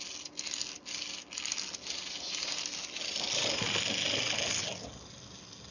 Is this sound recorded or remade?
recorded